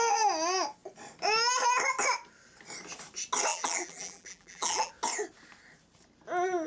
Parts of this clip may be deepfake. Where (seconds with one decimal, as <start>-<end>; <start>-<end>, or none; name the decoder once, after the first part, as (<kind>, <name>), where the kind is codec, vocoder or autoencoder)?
3.5-4.9 (vocoder, BigVGAN v2)